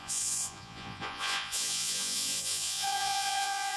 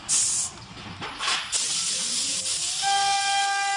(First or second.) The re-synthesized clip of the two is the first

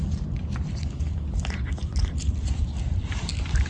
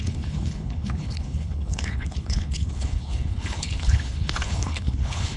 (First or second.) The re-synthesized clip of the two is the second